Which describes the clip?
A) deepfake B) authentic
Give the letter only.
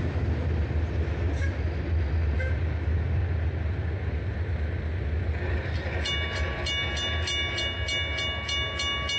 B